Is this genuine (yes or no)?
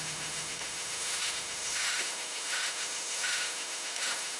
no